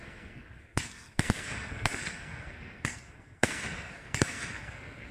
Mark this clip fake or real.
fake